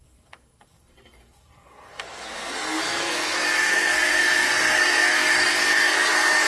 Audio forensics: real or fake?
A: fake